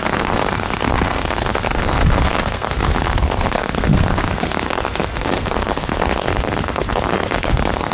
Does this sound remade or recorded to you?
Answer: remade